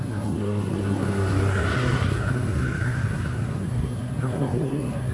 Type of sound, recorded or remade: remade